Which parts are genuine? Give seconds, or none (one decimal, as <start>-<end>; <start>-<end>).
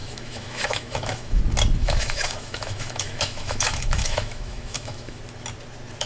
1.4-1.8; 5.2-6.1